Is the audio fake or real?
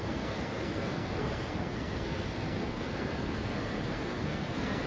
fake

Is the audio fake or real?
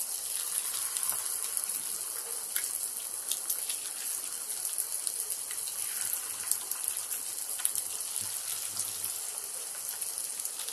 real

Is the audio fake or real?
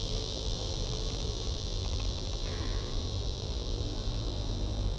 fake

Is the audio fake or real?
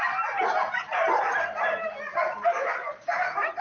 real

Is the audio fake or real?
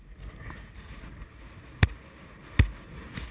real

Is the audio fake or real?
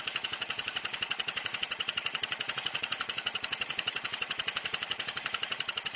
fake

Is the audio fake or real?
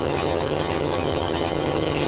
fake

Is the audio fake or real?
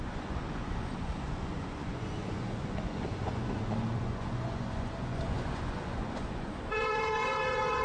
fake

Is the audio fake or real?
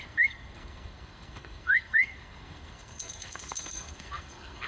fake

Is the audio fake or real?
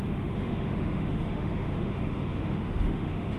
fake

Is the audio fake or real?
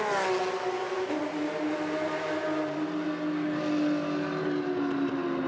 real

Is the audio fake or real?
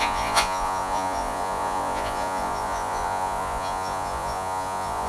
fake